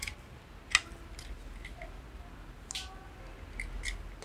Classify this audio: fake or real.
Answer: real